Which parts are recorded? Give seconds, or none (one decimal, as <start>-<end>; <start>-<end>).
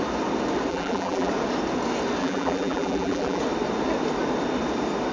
0.0-0.7; 1.3-2.2; 3.4-5.1